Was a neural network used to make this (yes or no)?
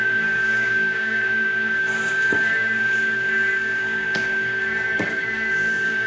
yes